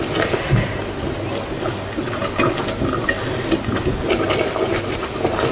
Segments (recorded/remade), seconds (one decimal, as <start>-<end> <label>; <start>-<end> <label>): 0.0-5.5 recorded